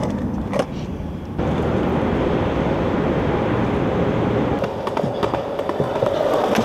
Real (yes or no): no